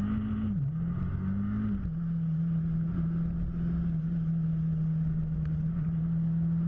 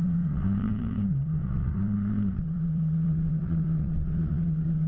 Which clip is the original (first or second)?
first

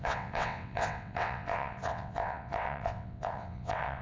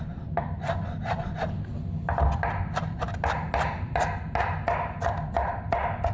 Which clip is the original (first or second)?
second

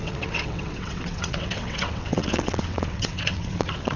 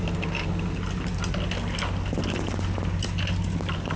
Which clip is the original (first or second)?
second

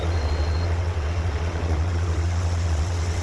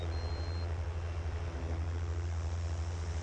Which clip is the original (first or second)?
second